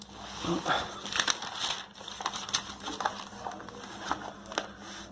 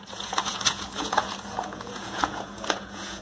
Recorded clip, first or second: first